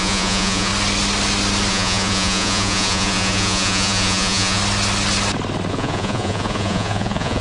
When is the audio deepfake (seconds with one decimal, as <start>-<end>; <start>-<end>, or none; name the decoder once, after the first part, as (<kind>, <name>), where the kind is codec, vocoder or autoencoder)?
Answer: 0.0-0.7 (vocoder, Vocos); 1.7-4.6; 5.7-7.4